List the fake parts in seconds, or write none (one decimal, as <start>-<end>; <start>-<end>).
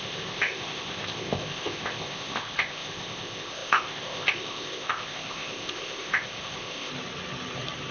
0.0-6.9